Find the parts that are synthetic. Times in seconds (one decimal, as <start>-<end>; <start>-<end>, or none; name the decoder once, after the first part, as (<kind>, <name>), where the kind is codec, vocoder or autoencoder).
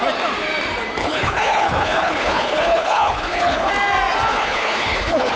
1.0-3.7 (codec, HILCodec); 4.3-5.4